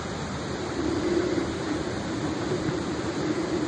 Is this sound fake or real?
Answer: fake